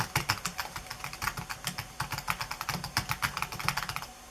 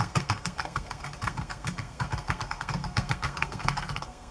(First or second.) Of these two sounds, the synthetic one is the second